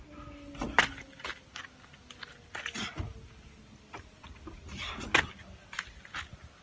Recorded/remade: recorded